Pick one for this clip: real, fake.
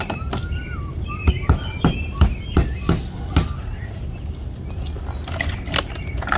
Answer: real